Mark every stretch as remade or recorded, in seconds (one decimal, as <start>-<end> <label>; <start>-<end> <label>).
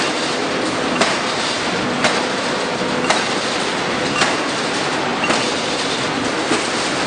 0.0-5.1 recorded; 5.1-5.9 remade; 5.9-7.1 recorded